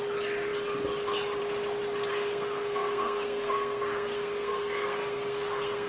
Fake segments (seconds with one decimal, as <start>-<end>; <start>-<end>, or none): 2.1-5.9